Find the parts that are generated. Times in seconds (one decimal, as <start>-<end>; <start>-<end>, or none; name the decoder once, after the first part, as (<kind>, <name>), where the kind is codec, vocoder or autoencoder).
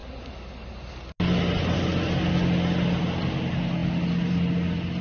none